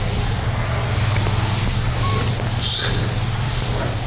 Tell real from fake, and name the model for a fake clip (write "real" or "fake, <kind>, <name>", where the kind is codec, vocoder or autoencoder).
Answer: real